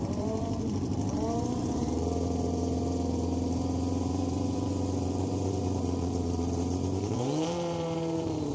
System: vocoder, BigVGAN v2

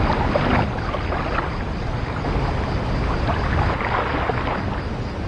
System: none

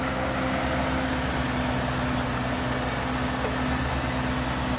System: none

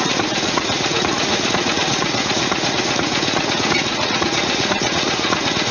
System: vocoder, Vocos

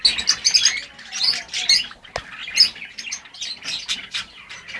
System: none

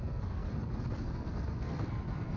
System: codec, SNAC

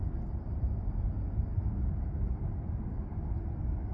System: none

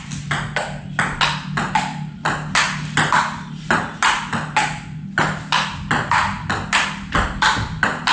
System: none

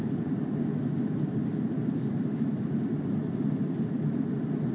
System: none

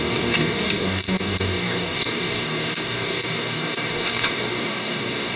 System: codec, DAC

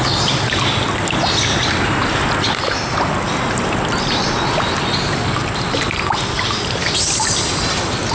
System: none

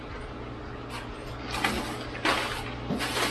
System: none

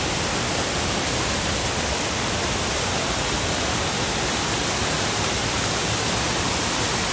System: none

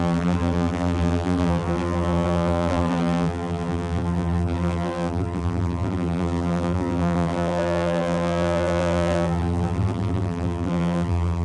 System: vocoder, BigVGAN v2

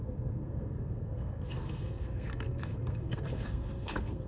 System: codec, SNAC